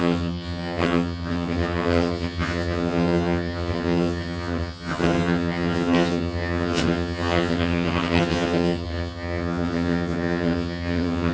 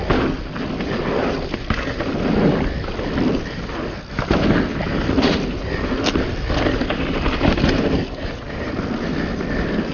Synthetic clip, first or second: first